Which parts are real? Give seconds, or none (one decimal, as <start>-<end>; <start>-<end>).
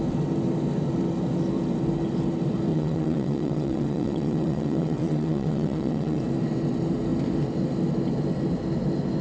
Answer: 0.0-2.7; 6.2-9.2